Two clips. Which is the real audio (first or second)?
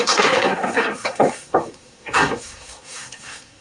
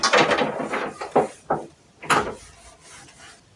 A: second